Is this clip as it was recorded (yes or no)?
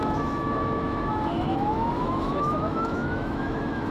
no